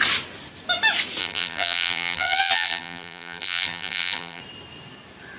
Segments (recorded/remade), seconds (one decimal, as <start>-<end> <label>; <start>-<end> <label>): 0.0-1.2 recorded; 1.2-4.4 remade; 4.4-5.4 recorded